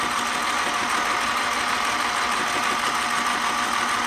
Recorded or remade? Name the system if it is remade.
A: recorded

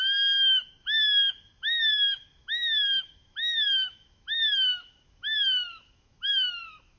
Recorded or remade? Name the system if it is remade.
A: remade, autoencoder, DAC-VAE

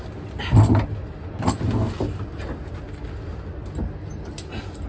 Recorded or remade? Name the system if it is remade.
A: recorded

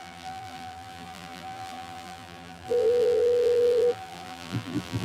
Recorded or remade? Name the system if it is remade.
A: remade, vocoder, BigVGAN v2